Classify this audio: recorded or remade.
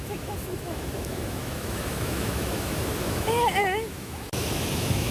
remade